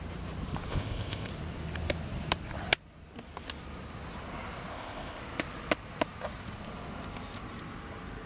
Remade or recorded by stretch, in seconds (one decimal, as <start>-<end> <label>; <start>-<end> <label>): 0.0-0.7 recorded; 0.7-1.3 remade; 1.3-4.7 recorded; 4.7-5.2 remade; 5.2-8.3 recorded